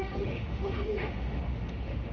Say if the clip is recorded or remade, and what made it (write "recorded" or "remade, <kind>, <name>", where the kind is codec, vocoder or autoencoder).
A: remade, autoencoder, DAC-VAE